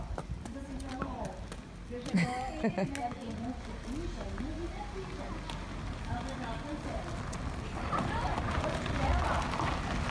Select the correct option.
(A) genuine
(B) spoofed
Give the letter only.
A